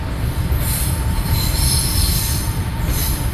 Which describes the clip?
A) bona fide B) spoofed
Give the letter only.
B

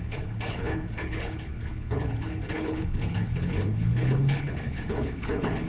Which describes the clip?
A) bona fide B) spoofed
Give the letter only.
B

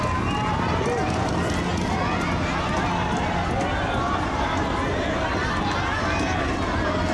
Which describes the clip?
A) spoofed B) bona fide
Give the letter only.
B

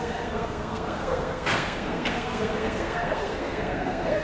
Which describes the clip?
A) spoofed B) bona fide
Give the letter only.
A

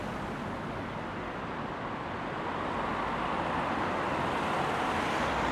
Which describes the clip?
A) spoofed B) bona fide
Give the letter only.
B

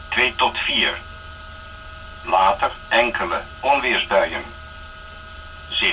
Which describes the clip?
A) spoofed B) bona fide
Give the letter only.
B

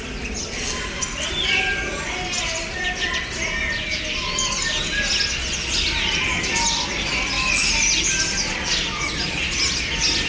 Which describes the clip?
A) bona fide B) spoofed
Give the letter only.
A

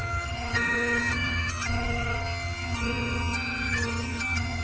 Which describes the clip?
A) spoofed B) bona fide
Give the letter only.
A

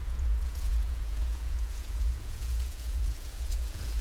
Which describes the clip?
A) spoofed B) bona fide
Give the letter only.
A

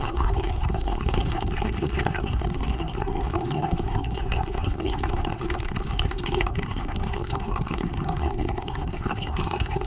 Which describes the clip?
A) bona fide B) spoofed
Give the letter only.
B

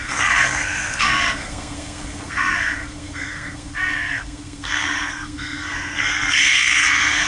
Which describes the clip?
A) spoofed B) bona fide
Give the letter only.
A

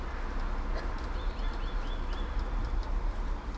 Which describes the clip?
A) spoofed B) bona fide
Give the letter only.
B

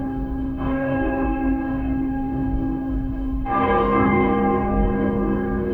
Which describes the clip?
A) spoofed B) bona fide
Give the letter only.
A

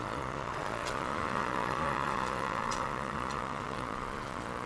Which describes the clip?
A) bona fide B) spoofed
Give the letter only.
B